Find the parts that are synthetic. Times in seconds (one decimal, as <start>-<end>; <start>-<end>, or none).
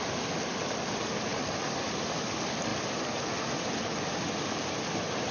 none